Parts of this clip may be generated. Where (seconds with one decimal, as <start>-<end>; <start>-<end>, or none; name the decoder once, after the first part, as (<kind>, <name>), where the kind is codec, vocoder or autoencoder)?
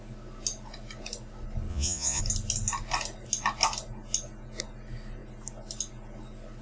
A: 1.7-2.2 (vocoder, Vocos)